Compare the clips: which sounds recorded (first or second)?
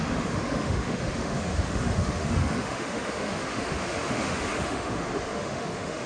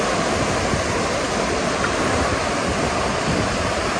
second